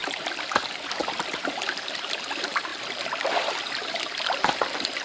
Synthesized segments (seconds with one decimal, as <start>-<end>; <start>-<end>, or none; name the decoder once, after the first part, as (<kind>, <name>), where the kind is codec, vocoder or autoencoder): 0.0-0.5 (vocoder, BigVGAN v2); 1.0-1.5